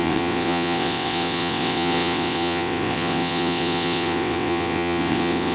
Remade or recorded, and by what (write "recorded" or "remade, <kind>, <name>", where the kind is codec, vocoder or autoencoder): remade, vocoder, WaveNeXt